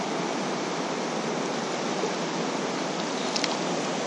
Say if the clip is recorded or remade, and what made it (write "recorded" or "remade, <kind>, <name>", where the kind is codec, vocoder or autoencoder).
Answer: recorded